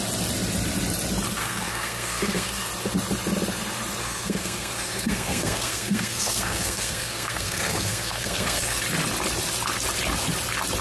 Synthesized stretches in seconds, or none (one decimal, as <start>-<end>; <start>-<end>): 1.4-2.7; 4.0-8.8